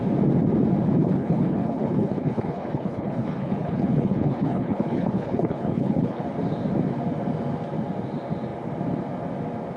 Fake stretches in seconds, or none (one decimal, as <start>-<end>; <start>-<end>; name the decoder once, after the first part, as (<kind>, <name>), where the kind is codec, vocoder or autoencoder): 1.0-6.2 (codec, HILCodec)